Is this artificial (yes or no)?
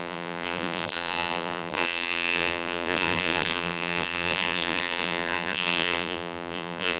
yes